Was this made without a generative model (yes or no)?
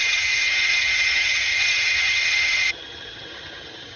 no